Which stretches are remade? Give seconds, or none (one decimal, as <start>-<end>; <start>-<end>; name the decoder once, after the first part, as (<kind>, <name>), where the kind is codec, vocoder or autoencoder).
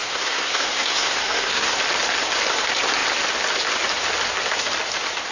0.0-1.8 (codec, SNAC)